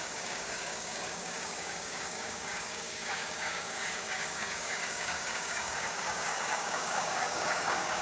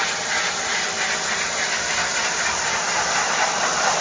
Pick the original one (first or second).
second